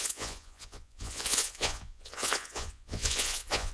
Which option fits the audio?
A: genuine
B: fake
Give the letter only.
B